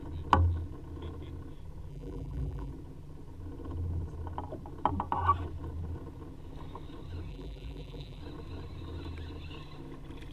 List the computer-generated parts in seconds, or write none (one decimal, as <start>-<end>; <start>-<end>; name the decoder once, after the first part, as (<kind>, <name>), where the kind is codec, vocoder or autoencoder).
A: 1.9-2.7 (vocoder, BigVGAN v2); 7.3-8.2